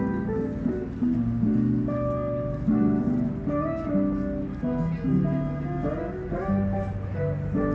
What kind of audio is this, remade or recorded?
recorded